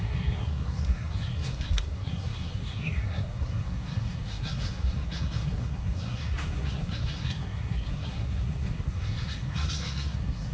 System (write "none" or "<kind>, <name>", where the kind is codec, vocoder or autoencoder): codec, SNAC